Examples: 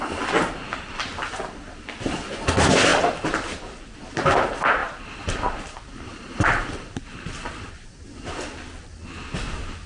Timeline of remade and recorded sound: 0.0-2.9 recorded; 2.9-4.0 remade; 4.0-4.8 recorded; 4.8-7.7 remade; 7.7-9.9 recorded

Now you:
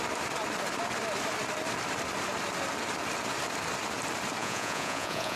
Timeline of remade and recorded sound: 0.0-4.4 recorded; 4.4-5.4 remade

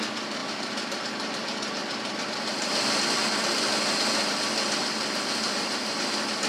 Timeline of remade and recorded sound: 0.0-0.4 recorded; 0.4-2.9 remade; 2.9-4.8 recorded; 4.8-6.5 remade

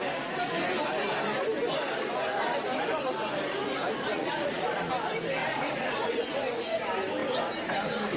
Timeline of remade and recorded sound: 0.0-4.1 recorded; 4.1-4.9 remade; 4.9-5.4 recorded; 5.4-6.8 remade; 6.8-8.2 recorded

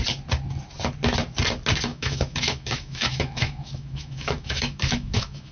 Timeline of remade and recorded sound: 0.0-1.9 recorded; 1.9-5.5 remade

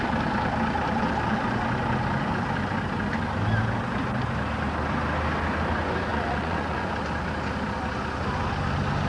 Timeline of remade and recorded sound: 0.0-6.1 recorded; 6.1-6.9 remade; 6.9-9.1 recorded

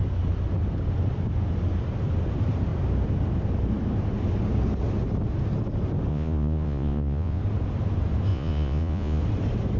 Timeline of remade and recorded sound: 0.0-6.1 recorded; 6.1-7.4 remade; 7.4-8.3 recorded; 8.3-9.2 remade; 9.2-9.8 recorded